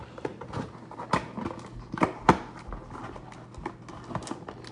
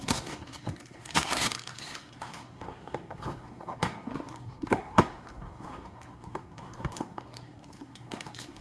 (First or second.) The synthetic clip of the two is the second